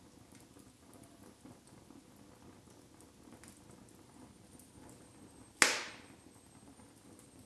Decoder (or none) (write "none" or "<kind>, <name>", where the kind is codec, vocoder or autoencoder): none